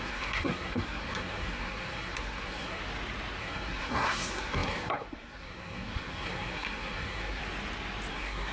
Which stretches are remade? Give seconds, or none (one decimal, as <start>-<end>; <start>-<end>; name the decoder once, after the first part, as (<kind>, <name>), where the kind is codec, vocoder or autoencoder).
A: 0.0-2.8 (codec, SNAC); 3.4-7.4; 8.1-8.5